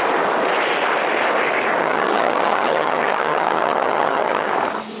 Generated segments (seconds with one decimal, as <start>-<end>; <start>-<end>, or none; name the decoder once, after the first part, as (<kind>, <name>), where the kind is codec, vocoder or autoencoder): 1.8-4.5 (vocoder, HiFi-GAN)